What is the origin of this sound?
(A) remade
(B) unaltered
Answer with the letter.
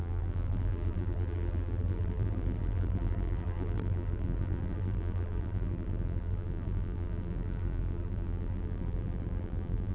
A